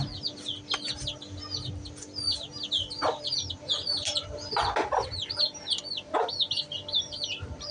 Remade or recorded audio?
recorded